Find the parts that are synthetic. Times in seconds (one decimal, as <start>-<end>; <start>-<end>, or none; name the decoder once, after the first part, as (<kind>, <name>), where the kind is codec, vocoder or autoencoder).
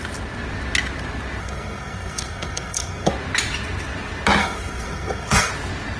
1.4-3.1 (codec, SNAC); 4.4-5.5